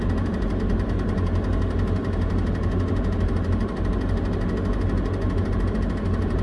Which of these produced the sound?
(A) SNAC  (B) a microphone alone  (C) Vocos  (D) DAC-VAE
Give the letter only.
B